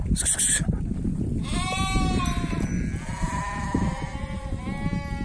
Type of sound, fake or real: real